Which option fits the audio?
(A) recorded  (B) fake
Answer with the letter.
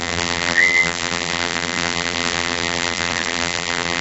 B